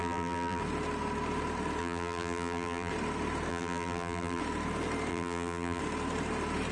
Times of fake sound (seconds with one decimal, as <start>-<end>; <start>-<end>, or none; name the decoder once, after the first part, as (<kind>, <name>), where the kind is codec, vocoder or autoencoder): 0.0-0.6 (vocoder, BigVGAN v2); 1.8-2.9; 3.5-4.4; 5.1-5.8